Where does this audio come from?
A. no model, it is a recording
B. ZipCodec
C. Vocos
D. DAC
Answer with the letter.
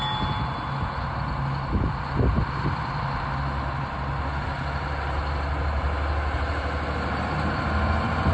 A